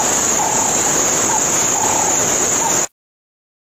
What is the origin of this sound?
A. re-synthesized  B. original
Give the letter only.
B